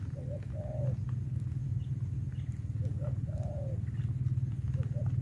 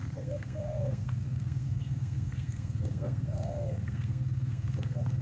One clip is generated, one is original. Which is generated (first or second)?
second